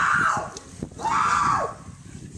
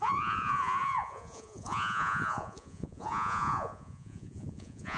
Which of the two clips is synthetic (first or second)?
second